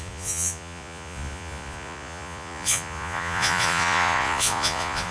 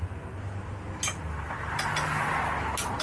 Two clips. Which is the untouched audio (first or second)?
second